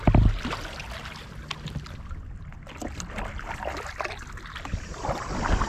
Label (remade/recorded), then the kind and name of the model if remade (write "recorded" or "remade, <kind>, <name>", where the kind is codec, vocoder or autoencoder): recorded